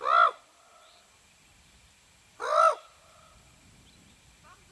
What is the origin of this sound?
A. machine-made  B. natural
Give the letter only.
B